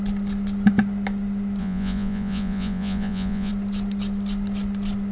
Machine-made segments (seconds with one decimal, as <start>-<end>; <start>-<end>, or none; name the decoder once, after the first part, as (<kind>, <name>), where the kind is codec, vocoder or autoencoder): 1.6-3.5 (vocoder, Vocos)